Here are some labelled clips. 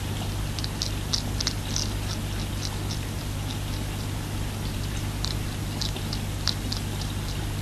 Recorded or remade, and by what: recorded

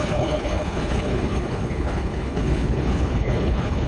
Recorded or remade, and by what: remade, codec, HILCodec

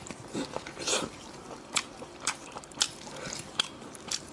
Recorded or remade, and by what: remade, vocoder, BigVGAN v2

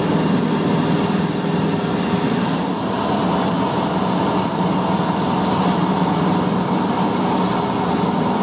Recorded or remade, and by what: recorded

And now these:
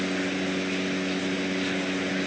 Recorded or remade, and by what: recorded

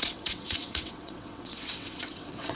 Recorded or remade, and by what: remade, vocoder, WaveNeXt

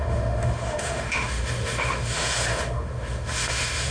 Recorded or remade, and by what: remade, autoencoder, DAC-VAE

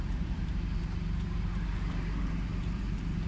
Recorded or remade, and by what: remade, vocoder, BigVGAN v2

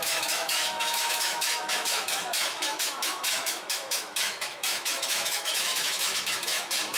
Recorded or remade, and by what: remade, autoencoder, DAC-VAE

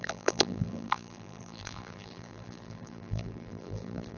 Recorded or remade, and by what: remade, vocoder, BigVGAN v2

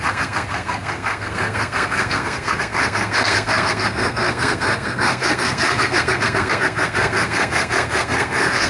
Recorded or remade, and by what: remade, codec, SNAC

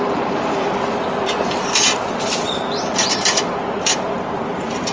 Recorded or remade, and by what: recorded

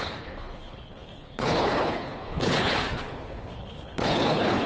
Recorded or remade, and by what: remade, codec, HILCodec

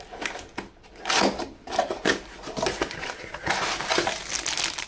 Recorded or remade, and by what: recorded